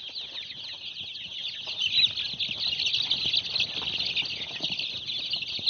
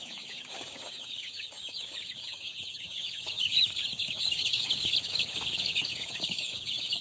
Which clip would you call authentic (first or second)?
first